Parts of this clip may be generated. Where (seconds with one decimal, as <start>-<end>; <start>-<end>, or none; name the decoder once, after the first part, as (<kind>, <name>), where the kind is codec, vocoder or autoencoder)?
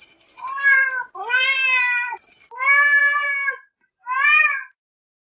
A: 3.0-3.9 (vocoder, BigVGAN v2)